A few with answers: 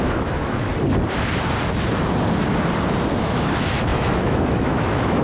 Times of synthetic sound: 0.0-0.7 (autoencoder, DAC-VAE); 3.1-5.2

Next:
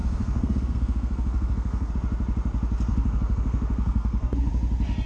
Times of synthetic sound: 0.0-1.9 (codec, SNAC); 2.9-4.5

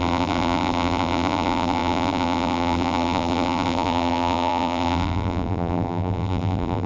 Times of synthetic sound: 0.0-6.9 (vocoder, BigVGAN v2)

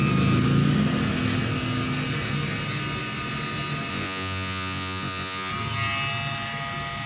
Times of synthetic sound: 3.9-5.5 (vocoder, Vocos)

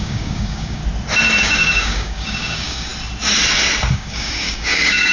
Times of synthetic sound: 0.0-0.8 (codec, DAC); 1.4-2.9; 3.9-5.1

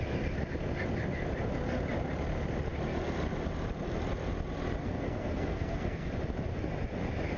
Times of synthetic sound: 4.8-6.1 (codec, SNAC)

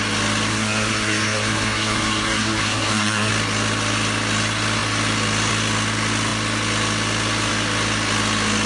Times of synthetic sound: 0.5-3.3 (codec, SNAC)